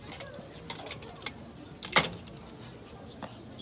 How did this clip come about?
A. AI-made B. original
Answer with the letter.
B